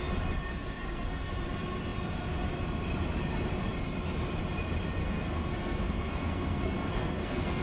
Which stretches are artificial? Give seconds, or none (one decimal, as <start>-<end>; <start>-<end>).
0.5-1.3; 5.0-7.6